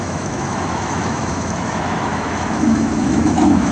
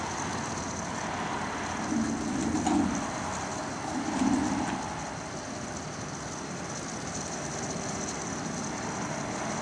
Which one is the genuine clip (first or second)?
second